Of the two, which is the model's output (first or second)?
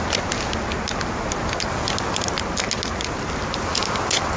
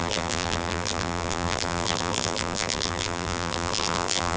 second